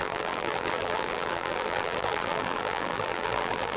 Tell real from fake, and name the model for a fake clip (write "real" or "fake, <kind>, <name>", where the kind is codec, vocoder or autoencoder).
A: fake, vocoder, BigVGAN v2